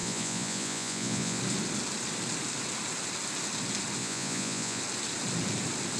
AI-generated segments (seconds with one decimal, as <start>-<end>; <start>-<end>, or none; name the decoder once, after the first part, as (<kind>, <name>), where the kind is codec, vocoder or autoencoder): 0.0-1.4 (vocoder, Vocos); 4.0-4.8